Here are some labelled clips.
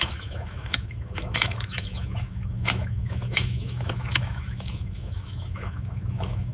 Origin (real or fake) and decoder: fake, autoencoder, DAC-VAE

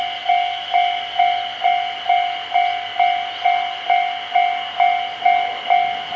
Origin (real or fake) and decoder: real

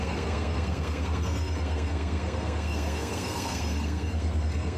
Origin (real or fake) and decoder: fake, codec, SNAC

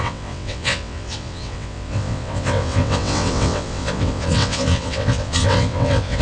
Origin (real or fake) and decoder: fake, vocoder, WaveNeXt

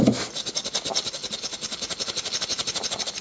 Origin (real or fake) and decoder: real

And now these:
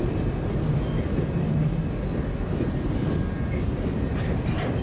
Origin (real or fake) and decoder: real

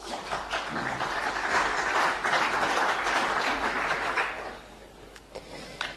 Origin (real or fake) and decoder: fake, codec, DAC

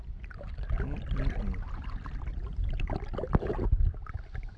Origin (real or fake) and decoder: real